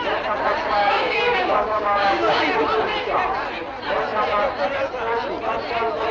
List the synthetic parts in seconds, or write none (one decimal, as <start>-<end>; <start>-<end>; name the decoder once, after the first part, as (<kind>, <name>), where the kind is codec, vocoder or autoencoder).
0.8-2.4 (codec, DAC)